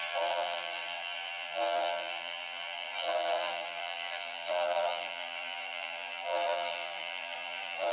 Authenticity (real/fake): fake